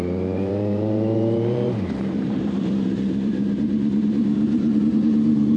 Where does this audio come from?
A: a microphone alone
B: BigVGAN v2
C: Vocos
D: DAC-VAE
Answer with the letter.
B